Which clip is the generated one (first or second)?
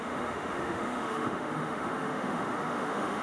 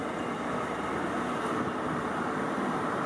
first